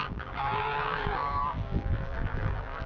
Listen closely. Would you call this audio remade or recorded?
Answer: remade